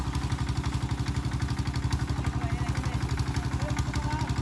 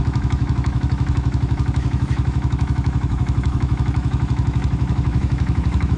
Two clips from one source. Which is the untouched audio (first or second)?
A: first